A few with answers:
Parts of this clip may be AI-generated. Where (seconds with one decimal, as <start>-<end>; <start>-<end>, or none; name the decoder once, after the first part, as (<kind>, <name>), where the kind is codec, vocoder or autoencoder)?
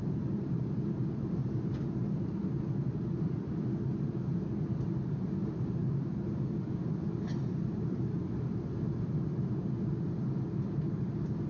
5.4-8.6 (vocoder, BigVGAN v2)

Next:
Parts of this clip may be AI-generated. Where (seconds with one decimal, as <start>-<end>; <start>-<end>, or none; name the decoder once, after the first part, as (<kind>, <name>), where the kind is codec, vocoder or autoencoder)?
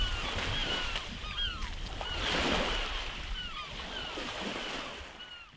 0.6-4.0 (vocoder, BigVGAN v2)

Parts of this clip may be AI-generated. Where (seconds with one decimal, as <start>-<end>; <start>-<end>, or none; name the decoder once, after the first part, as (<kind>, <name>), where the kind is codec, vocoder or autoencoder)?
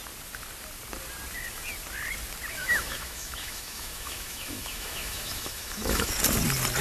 2.6-6.1 (autoencoder, DAC-VAE)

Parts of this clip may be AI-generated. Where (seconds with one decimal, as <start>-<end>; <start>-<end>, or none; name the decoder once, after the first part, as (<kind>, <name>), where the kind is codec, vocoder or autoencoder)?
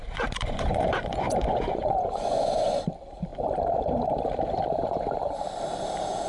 0.0-2.8 (vocoder, Vocos)